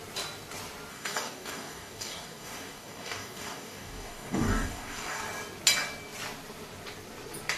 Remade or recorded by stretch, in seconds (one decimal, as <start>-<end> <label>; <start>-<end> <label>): 0.0-0.9 recorded; 0.9-5.2 remade; 5.2-7.6 recorded